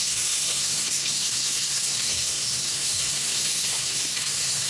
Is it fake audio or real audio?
fake